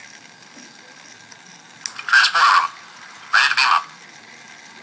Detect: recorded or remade recorded